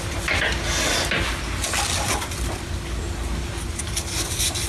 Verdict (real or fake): real